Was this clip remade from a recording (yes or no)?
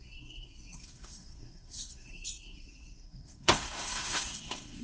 yes